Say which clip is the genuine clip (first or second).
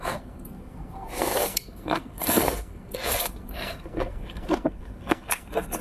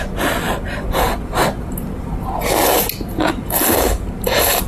second